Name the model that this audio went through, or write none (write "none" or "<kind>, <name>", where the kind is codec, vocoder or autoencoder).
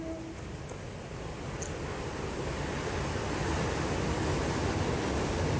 none